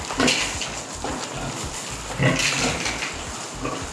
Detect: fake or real real